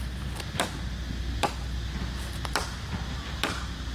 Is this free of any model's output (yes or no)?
no